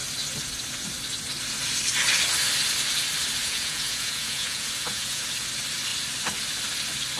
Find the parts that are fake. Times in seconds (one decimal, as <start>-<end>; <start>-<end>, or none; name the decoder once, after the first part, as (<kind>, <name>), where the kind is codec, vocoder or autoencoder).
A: 3.4-5.2 (vocoder, Vocos)